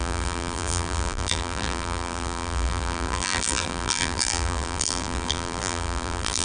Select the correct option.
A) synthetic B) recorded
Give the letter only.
A